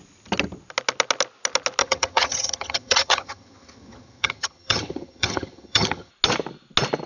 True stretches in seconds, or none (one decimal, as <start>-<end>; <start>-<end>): 0.0-1.8; 6.1-7.1